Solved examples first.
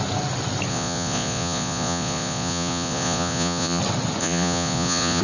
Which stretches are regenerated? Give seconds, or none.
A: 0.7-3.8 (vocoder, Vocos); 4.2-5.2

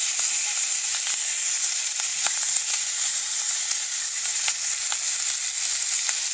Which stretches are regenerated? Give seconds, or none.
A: 2.1-4.7 (vocoder, Vocos)

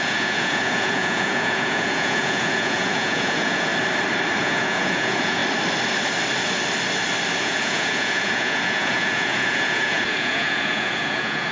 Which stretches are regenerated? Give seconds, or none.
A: 0.0-3.7 (vocoder, Vocos); 4.4-5.4; 7.4-11.5

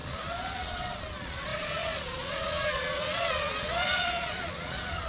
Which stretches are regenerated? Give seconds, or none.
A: 0.0-5.1 (vocoder, Vocos)

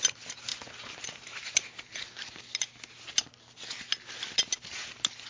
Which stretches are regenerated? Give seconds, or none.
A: none

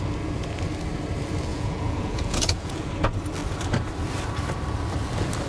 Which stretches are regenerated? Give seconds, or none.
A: 1.5-2.9 (vocoder, Vocos)

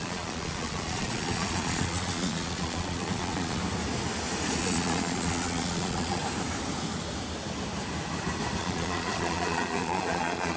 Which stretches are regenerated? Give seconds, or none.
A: 0.0-3.6 (vocoder, Vocos); 4.6-6.2; 8.6-10.6